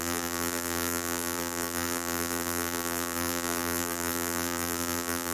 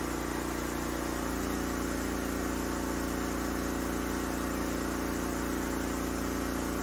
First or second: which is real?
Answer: second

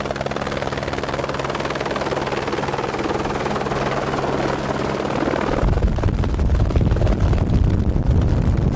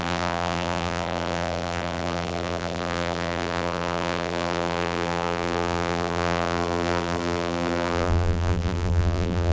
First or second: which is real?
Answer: first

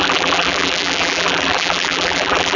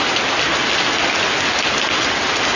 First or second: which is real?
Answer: second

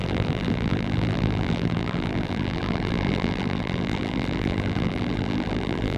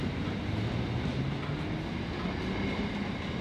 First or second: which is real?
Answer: second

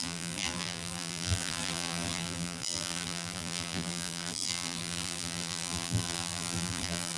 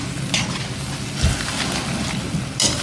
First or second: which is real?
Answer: second